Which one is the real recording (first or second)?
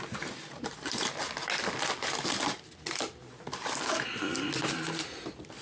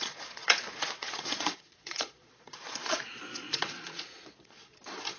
first